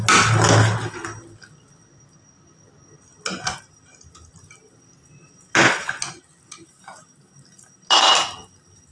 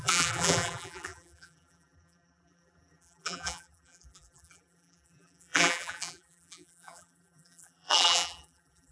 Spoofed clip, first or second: second